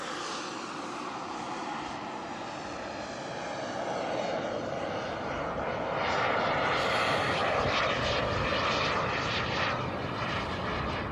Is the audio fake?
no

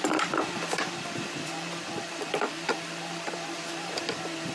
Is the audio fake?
yes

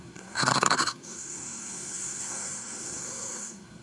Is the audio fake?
yes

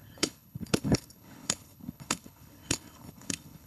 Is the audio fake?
yes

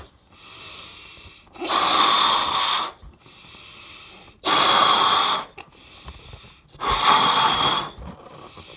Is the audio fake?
no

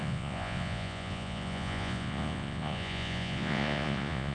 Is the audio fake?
yes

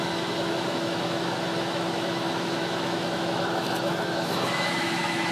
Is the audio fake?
yes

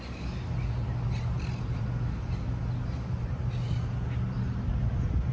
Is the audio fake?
no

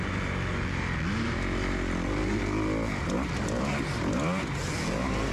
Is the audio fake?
no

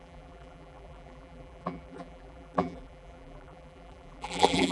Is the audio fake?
yes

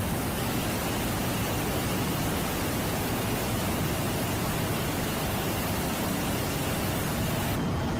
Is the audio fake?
no